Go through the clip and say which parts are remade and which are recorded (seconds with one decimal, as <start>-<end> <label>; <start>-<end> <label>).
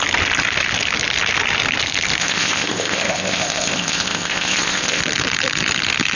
0.0-2.2 recorded; 2.2-5.0 remade; 5.0-6.1 recorded